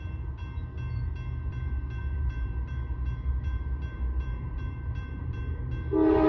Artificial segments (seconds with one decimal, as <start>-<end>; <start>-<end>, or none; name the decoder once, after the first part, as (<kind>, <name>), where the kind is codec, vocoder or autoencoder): 0.0-0.4 (vocoder, BigVGAN v2); 1.5-6.3